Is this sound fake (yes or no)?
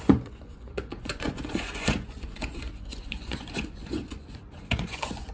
yes